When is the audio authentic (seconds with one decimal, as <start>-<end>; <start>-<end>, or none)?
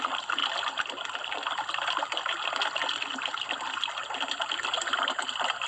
0.0-5.7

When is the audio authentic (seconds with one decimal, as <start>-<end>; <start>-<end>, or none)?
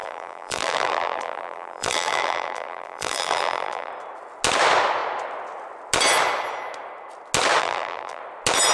3.9-7.6; 8.2-8.7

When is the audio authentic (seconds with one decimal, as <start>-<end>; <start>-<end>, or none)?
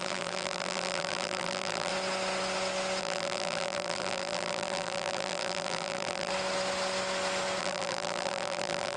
1.9-3.0; 6.3-7.6